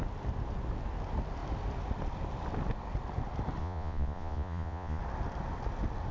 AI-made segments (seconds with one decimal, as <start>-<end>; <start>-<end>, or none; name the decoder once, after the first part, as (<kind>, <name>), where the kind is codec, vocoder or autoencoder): 3.6-5.0 (vocoder, Vocos)